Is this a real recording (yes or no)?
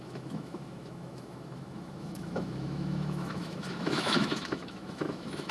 no